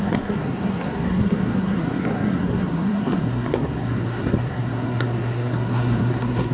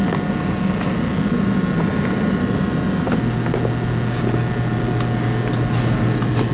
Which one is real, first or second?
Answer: second